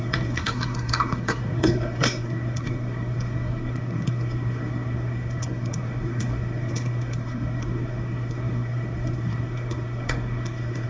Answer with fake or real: fake